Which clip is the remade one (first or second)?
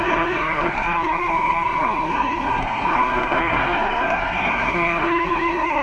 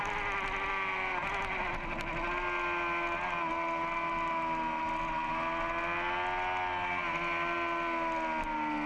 first